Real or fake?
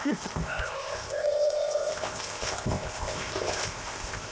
fake